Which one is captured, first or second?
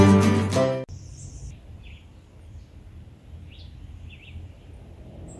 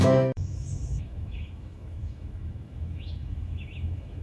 first